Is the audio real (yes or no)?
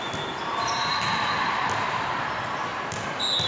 yes